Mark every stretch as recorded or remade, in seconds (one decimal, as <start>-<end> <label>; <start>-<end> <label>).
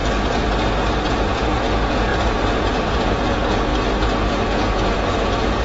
0.0-1.1 recorded; 1.1-3.7 remade; 3.7-4.3 recorded; 4.3-5.6 remade